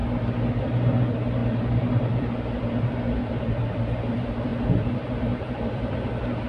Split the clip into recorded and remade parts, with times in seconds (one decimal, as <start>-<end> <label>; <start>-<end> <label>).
0.0-0.6 recorded; 0.6-6.5 remade